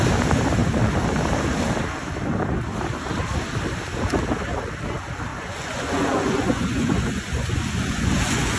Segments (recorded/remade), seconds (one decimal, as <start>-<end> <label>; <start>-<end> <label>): 0.0-5.3 recorded; 5.3-8.6 remade